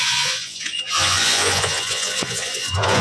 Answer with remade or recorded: remade